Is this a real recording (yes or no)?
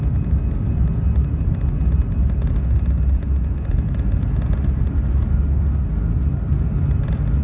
yes